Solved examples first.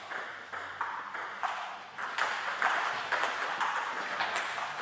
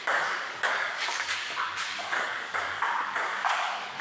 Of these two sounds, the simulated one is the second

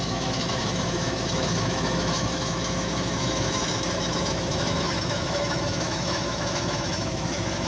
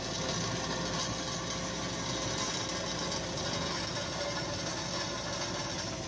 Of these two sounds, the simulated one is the first